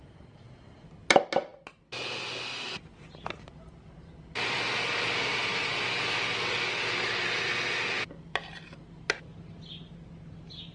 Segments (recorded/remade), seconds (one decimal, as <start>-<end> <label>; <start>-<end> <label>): 0.0-10.7 recorded